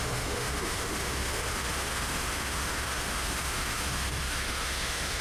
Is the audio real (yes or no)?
no